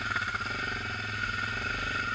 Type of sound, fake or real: real